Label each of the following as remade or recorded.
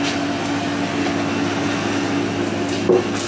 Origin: recorded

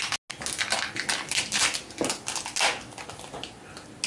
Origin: recorded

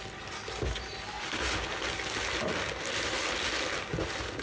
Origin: recorded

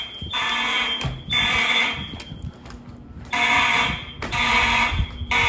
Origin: recorded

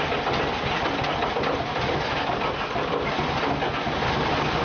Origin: recorded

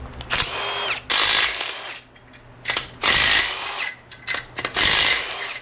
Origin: recorded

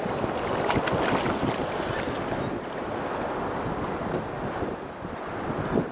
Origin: recorded